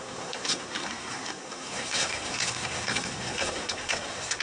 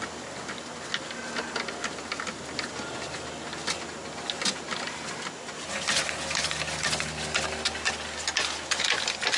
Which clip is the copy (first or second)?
first